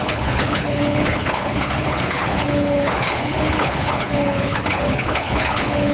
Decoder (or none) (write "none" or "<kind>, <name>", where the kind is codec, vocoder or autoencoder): codec, HILCodec